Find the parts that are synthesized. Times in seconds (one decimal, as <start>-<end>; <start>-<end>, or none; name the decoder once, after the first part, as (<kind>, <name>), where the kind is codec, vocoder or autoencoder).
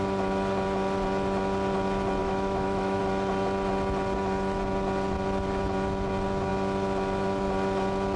2.2-3.0 (autoencoder, DAC-VAE)